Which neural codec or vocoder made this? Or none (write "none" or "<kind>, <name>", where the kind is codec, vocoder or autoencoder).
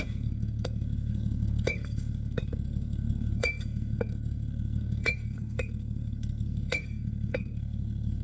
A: codec, SNAC